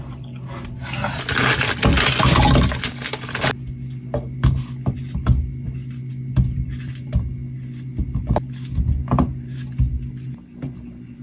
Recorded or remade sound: recorded